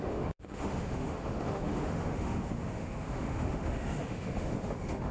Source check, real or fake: fake